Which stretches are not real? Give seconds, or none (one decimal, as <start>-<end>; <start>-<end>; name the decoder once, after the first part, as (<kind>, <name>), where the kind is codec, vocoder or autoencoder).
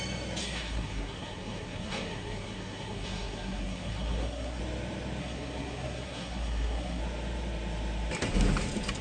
0.4-4.6 (codec, SNAC); 5.2-7.0